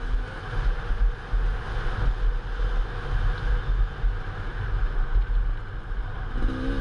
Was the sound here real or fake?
real